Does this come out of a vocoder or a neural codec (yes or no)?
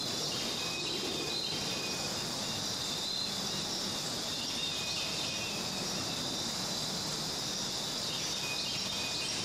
no